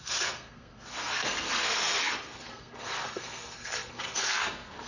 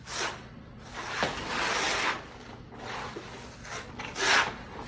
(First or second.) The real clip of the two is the second